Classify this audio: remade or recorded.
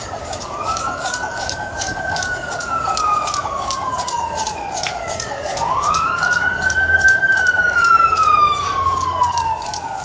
remade